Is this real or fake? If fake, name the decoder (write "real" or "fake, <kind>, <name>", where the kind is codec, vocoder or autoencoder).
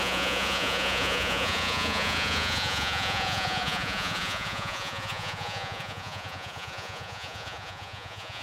fake, vocoder, Vocos